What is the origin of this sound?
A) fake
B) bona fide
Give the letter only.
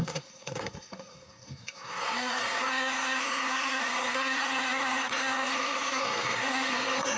A